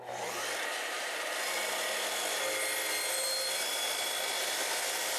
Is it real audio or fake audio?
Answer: real